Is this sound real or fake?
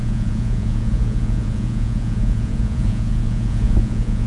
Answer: fake